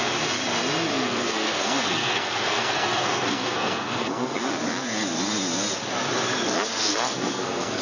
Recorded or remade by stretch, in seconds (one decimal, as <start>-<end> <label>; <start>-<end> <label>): 0.0-0.9 recorded; 0.9-4.5 remade; 4.5-6.9 recorded; 6.9-7.8 remade